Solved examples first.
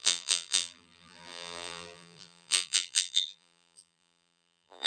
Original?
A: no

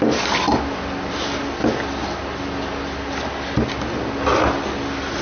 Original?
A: yes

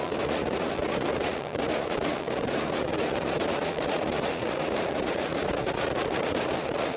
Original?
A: no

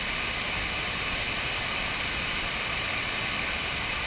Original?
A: yes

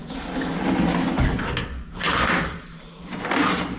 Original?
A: yes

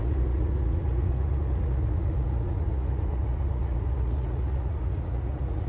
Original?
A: no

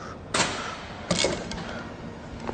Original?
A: yes